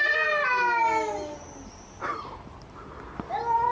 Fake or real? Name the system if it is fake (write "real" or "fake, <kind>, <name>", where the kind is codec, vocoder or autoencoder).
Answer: real